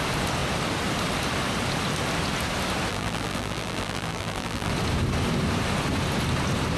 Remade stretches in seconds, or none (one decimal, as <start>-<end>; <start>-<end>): 2.9-4.7